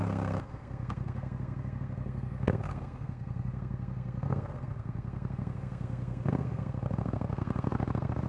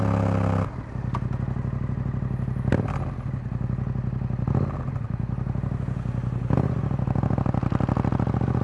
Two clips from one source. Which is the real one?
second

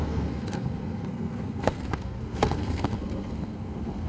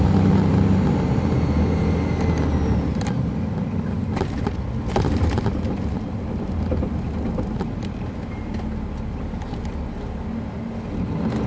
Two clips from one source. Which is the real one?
second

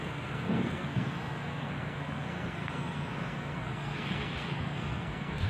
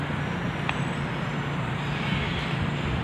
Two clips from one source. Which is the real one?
second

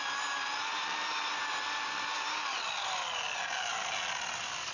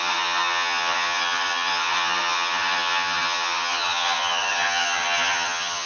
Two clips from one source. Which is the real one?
first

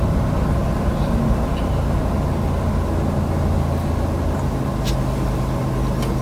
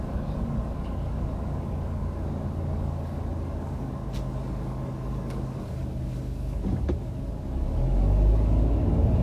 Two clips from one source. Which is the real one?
first